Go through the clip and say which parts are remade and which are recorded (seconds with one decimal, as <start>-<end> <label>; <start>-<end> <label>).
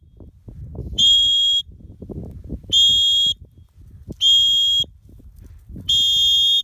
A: 0.0-0.8 recorded; 0.8-1.6 remade; 1.6-6.6 recorded